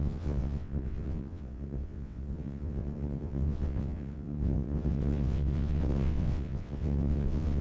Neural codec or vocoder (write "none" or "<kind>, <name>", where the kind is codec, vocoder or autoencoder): vocoder, WaveNeXt